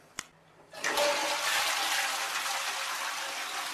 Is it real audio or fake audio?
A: real